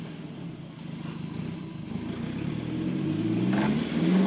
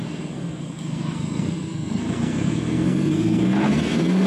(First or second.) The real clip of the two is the first